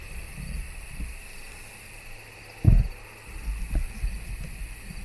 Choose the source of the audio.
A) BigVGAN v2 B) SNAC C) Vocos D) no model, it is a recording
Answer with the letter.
D